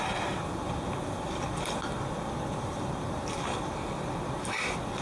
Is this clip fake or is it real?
real